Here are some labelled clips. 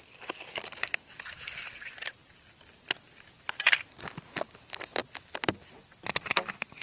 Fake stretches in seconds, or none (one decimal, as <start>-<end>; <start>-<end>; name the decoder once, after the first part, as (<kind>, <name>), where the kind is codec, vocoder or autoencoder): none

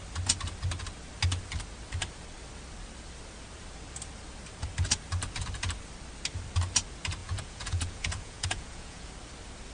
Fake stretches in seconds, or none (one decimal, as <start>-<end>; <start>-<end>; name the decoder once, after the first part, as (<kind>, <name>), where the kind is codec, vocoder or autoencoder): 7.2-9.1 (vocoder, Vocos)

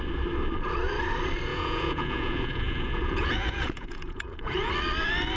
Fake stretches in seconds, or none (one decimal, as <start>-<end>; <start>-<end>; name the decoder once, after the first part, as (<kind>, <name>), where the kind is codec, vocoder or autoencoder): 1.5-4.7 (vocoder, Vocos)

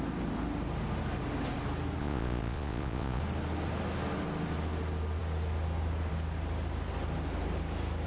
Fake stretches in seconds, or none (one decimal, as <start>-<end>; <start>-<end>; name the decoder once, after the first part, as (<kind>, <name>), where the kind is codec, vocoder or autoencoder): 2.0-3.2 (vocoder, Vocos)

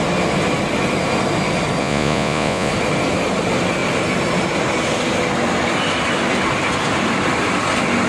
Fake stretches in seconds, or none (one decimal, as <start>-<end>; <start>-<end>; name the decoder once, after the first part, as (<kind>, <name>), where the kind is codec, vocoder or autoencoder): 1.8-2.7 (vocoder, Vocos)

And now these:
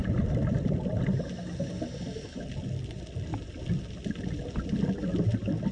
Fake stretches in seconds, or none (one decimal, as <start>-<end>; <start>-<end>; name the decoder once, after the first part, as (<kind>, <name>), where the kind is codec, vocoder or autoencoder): none

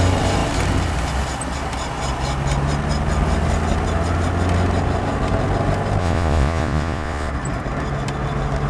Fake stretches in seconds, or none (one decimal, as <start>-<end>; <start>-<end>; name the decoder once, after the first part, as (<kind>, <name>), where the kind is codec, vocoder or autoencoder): 6.0-7.3 (vocoder, Vocos)